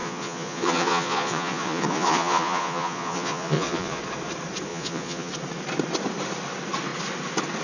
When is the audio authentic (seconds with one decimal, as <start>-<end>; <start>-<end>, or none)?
4.0-4.7; 5.3-7.6